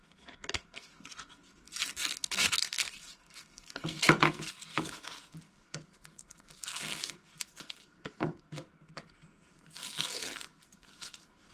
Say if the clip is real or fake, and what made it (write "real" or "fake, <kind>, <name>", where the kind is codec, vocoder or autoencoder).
fake, codec, SNAC